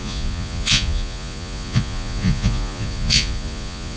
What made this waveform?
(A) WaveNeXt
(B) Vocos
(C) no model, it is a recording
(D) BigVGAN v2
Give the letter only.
B